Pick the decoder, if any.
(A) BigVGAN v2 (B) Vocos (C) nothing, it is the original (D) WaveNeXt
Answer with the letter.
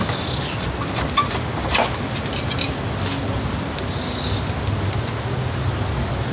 C